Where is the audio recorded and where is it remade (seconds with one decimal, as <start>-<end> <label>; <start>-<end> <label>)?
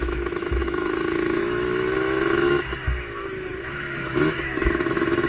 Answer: 0.0-5.3 remade